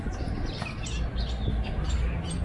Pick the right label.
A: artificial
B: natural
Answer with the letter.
B